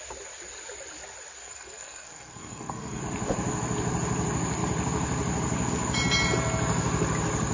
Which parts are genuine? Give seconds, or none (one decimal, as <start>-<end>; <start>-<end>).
0.0-1.4; 3.0-7.5